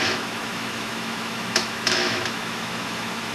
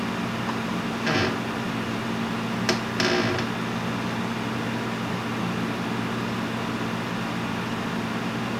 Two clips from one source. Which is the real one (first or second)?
second